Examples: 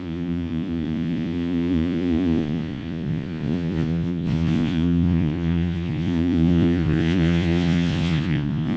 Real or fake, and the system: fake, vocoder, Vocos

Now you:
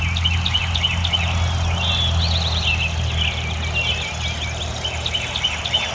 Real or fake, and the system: real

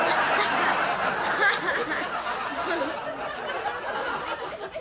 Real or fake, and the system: real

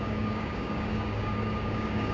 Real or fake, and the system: fake, codec, DAC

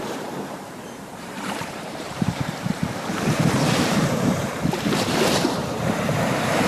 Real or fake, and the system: fake, vocoder, BigVGAN v2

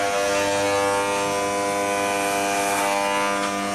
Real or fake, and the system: real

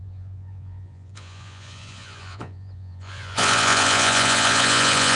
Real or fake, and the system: fake, vocoder, Vocos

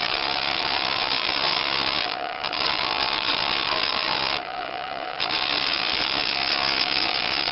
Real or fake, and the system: fake, vocoder, Vocos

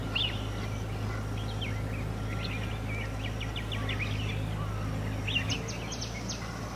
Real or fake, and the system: real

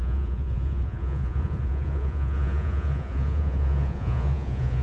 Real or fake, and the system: fake, vocoder, Vocos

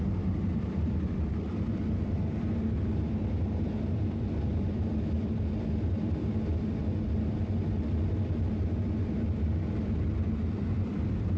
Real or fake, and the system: fake, vocoder, BigVGAN v2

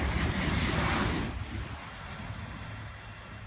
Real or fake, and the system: real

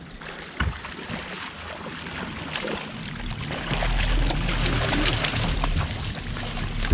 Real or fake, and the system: real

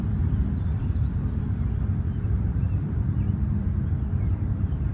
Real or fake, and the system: fake, vocoder, BigVGAN v2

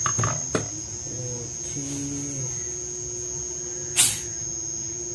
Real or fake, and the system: real